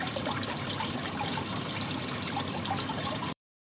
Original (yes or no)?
no